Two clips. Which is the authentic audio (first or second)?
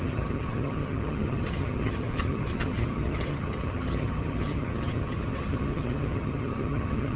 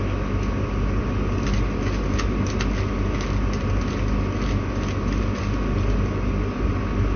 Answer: second